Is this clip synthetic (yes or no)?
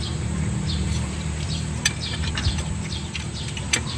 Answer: yes